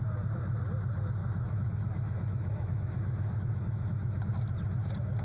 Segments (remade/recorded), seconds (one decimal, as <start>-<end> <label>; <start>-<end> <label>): 0.0-1.2 recorded; 1.2-4.3 remade; 4.3-5.2 recorded